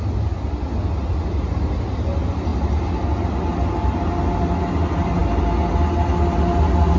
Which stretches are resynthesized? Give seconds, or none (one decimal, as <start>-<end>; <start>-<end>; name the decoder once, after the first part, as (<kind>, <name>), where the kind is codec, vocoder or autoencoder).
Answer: none